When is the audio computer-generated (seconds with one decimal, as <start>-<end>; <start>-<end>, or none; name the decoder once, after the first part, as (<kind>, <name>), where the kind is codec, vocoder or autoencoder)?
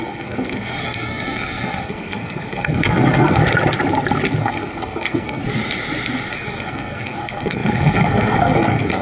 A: 0.0-3.4 (codec, SNAC); 4.4-5.4; 6.3-9.0